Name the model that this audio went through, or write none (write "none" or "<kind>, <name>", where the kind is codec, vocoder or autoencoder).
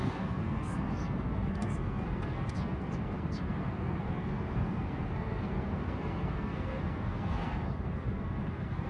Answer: codec, SNAC